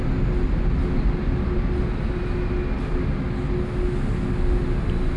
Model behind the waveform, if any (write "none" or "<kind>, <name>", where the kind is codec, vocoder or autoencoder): none